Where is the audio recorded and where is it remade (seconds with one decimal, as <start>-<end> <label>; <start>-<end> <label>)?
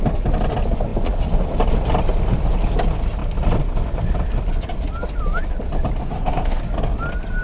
0.0-6.0 recorded; 6.0-6.6 remade; 6.6-7.4 recorded